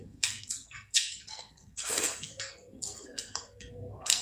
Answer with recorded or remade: remade